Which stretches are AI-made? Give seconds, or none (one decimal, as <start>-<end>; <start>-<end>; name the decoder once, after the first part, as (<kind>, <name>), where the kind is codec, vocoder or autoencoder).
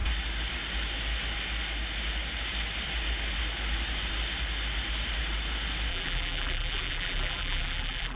5.9-8.2 (vocoder, BigVGAN v2)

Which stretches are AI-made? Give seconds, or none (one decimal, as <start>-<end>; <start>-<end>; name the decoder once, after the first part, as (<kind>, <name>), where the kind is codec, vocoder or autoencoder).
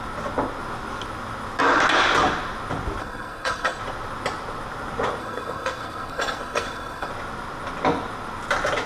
3.0-3.8 (codec, SNAC); 5.2-7.1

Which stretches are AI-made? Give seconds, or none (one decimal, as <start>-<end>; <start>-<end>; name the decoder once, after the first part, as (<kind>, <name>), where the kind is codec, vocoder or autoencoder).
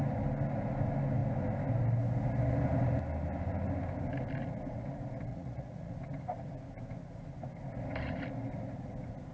5.3-5.9 (vocoder, Vocos)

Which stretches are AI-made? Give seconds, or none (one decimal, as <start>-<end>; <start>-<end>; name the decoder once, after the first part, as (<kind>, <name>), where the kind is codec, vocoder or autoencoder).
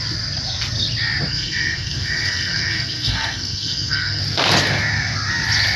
1.3-4.2 (codec, SNAC)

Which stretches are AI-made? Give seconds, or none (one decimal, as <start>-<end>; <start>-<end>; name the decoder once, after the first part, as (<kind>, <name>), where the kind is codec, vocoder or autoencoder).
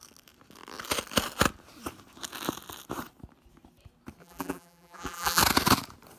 4.2-5.4 (vocoder, BigVGAN v2)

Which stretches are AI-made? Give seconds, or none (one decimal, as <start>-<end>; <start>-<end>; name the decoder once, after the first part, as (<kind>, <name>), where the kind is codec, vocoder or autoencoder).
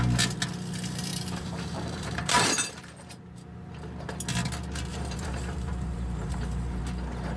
1.1-3.7 (vocoder, BigVGAN v2); 4.9-6.8